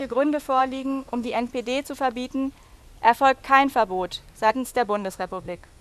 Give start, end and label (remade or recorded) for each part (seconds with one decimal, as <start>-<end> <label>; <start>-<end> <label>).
0.0-1.5 remade; 1.5-4.5 recorded; 4.5-5.8 remade